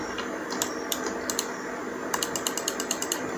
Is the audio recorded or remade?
recorded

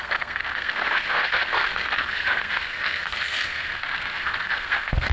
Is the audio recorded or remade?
remade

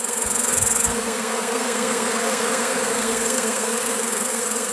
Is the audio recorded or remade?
remade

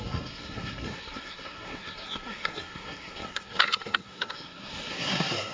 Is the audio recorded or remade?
remade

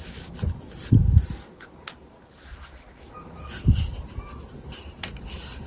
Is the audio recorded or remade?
recorded